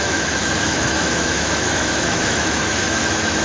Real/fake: fake